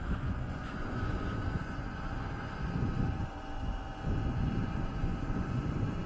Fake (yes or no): yes